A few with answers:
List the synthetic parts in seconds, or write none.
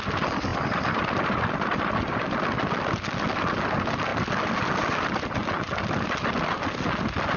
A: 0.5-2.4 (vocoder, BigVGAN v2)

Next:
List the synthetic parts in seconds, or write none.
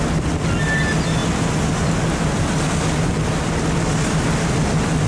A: none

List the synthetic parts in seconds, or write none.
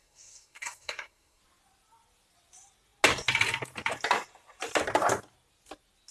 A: 0.0-1.4 (codec, SNAC)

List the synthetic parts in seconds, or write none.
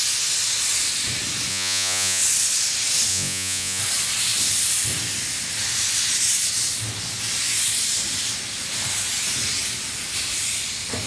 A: 1.5-2.2 (vocoder, Vocos); 3.1-3.8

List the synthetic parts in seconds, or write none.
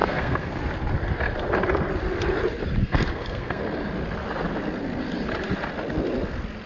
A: 0.0-0.6 (codec, SNAC); 2.8-3.6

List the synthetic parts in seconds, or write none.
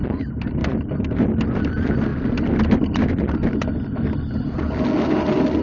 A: none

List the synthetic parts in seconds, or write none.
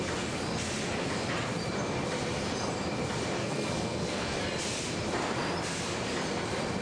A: 3.4-4.4 (codec, SNAC)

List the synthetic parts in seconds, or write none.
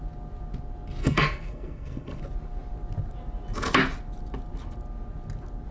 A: 1.0-2.2 (codec, SNAC)